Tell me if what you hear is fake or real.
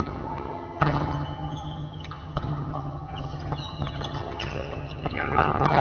fake